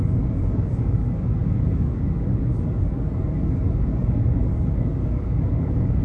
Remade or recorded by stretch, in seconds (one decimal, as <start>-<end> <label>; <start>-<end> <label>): 0.0-6.0 remade